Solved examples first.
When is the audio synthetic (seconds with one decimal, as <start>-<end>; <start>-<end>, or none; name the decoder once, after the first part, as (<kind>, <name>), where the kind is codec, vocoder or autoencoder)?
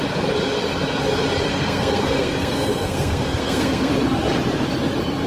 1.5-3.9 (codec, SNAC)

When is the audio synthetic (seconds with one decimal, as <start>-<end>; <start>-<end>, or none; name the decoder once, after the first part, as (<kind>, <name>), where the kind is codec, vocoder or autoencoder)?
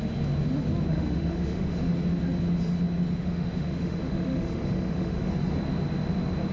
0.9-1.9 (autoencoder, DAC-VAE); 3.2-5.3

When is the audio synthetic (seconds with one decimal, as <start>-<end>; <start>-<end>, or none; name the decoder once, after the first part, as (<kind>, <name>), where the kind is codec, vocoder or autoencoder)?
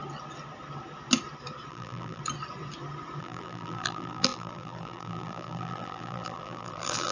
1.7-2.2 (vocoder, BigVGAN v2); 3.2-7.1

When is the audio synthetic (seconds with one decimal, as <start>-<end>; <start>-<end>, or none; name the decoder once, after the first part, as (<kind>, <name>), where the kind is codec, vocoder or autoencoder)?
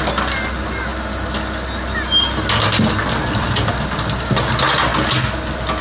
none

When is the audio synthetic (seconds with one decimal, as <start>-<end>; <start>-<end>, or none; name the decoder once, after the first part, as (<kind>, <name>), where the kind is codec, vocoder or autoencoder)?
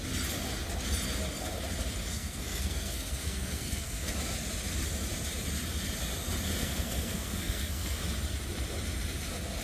2.1-4.1 (codec, SNAC); 6.6-8.0